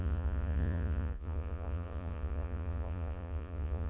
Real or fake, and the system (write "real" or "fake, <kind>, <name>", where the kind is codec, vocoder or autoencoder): fake, vocoder, Vocos